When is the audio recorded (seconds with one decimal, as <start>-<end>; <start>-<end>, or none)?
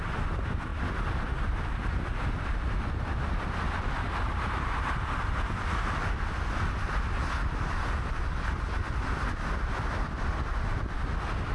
0.0-11.5